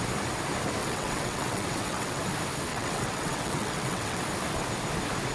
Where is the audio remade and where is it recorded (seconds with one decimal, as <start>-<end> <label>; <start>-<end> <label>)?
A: 0.0-0.8 recorded; 0.8-2.2 remade; 2.2-2.7 recorded; 2.7-4.2 remade; 4.2-5.3 recorded